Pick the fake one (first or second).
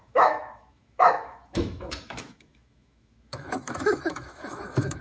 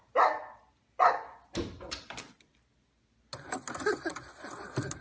first